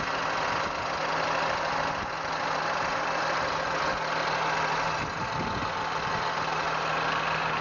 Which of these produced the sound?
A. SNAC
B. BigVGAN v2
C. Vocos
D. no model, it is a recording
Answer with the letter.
D